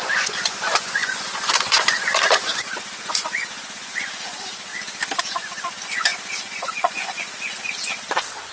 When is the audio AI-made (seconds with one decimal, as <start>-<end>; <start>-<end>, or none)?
0.0-4.7; 5.2-8.5

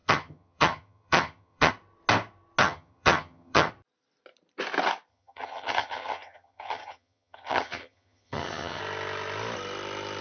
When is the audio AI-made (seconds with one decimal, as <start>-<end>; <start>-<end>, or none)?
0.0-1.7; 2.6-3.7; 5.1-8.8